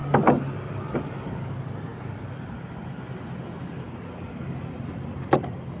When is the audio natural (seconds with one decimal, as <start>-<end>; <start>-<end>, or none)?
0.0-5.8